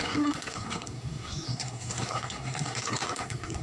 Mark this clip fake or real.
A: fake